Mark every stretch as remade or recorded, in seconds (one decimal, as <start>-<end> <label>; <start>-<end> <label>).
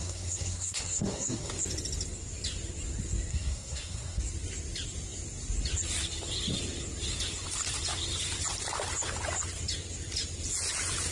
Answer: 0.0-1.5 remade; 1.5-3.3 recorded; 3.3-4.2 remade; 4.2-11.1 recorded